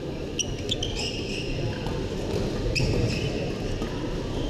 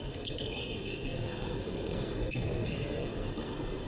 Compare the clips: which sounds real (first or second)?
first